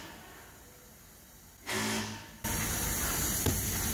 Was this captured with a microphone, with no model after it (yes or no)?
yes